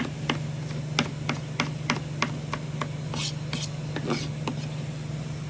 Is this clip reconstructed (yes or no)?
no